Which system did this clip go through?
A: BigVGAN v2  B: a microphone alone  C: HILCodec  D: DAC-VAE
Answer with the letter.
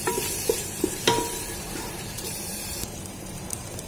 A